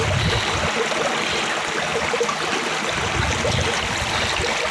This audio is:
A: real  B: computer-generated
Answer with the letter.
A